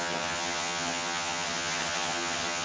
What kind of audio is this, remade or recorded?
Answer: remade